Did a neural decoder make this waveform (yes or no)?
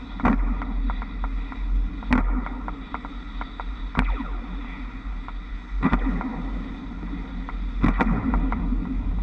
no